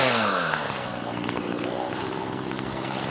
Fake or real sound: fake